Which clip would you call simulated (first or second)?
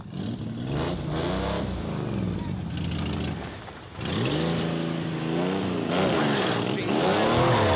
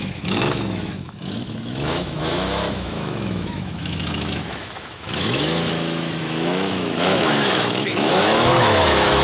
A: second